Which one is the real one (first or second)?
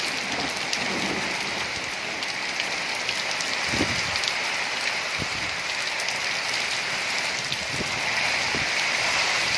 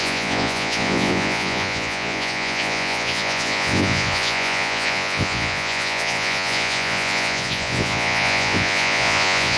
first